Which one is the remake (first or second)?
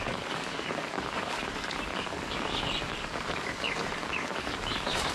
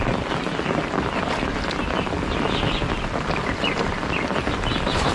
first